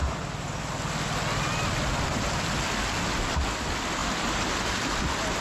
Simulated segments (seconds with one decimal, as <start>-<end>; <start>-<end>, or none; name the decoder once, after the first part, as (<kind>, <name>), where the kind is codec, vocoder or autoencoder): 4.0-4.7 (vocoder, BigVGAN v2)